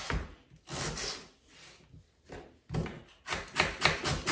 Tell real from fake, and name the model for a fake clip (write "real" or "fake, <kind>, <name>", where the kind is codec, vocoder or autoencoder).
real